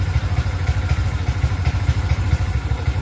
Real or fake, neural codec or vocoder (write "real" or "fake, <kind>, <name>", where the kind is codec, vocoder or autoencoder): real